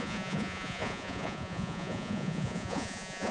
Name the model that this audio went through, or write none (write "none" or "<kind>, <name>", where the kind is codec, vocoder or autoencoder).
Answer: vocoder, Vocos